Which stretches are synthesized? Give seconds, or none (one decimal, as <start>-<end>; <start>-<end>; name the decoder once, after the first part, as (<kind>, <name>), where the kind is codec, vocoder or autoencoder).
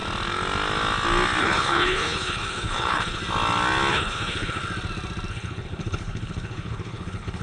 1.4-3.2 (codec, HILCodec); 3.9-4.6; 5.3-7.4